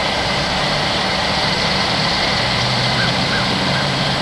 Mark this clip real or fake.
fake